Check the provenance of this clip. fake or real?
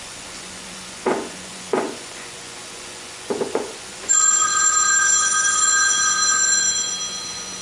fake